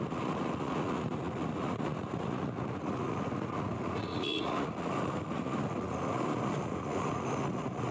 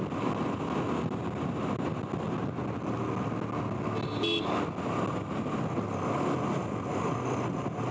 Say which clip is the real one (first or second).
second